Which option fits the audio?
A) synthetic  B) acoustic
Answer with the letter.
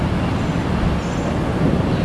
B